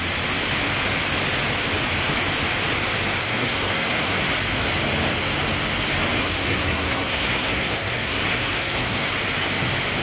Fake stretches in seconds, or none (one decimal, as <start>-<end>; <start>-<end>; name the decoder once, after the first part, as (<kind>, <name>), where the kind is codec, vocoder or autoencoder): 3.2-4.3 (codec, SNAC); 6.2-9.1